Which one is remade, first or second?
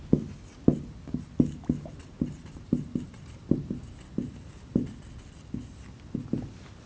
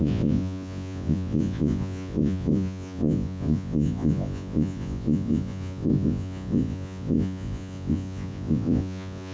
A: second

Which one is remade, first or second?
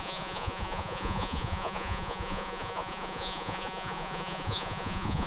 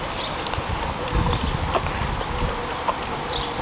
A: first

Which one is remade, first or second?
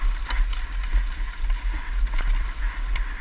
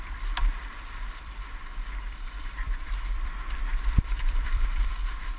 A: second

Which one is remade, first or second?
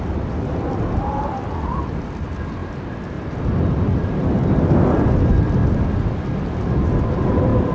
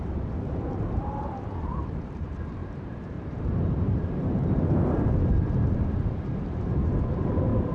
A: second